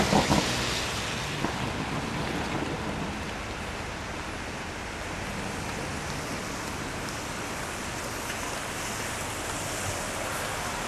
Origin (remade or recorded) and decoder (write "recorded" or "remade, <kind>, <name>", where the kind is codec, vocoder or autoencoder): recorded